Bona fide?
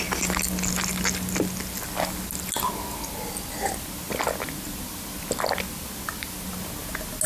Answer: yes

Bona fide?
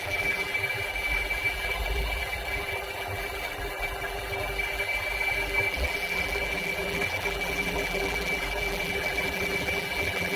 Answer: no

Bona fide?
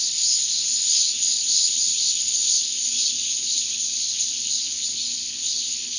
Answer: no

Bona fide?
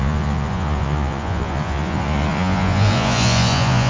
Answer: no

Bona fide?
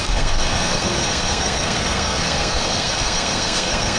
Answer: no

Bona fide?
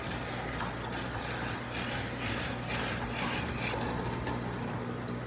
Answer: yes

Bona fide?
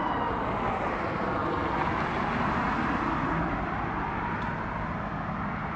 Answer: yes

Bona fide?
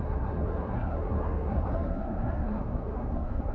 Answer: no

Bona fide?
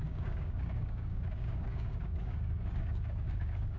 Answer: no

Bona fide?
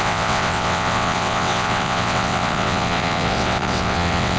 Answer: no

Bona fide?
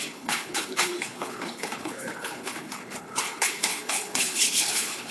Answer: no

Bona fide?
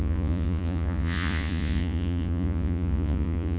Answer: no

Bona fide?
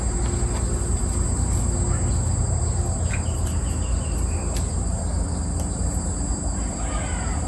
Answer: yes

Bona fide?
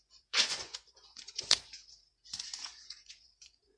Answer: no